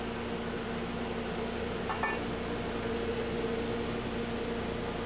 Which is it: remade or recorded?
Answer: recorded